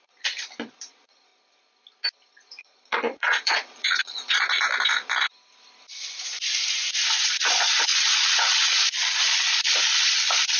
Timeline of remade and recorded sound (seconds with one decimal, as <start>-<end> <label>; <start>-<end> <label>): 0.0-1.3 remade; 1.3-2.5 recorded; 2.5-4.7 remade; 4.7-7.2 recorded; 7.2-10.6 remade